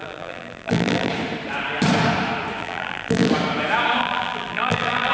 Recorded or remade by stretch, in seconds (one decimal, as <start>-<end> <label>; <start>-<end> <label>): 0.0-1.1 remade; 1.1-2.6 recorded; 2.6-3.3 remade; 3.3-4.0 recorded; 4.0-5.1 remade